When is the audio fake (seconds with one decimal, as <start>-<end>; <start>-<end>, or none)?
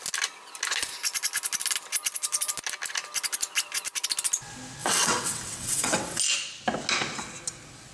4.8-6.2